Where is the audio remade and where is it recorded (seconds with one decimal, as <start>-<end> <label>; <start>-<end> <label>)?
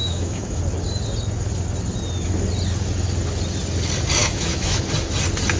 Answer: 0.0-0.6 remade; 0.6-4.2 recorded; 4.2-4.8 remade; 4.8-5.6 recorded